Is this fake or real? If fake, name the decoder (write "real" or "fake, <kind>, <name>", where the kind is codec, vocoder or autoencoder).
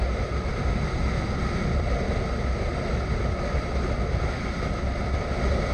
real